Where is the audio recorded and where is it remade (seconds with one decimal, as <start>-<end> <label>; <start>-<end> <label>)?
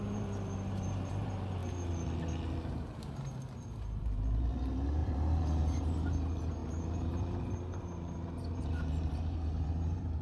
0.0-1.6 remade; 1.6-4.0 recorded; 4.0-10.2 remade